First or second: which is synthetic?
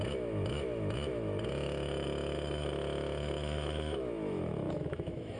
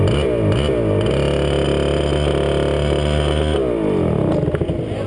first